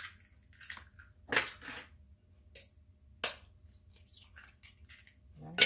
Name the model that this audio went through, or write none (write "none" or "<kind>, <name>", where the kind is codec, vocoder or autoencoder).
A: none